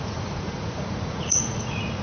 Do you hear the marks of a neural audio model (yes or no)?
yes